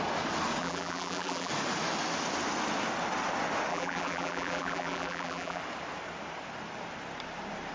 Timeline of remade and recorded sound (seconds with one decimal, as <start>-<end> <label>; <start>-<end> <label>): 0.0-0.6 recorded; 0.6-1.5 remade; 1.5-3.7 recorded; 3.7-5.6 remade; 5.6-7.7 recorded